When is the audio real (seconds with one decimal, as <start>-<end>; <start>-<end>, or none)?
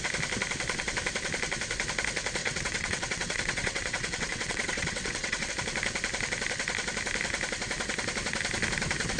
0.0-2.4; 5.5-9.2